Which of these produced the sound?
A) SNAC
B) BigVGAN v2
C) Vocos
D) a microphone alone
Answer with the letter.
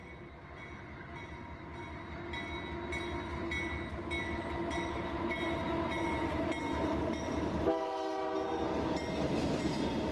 D